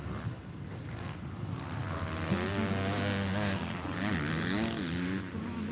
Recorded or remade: recorded